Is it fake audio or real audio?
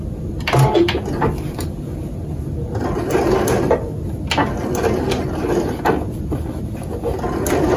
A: real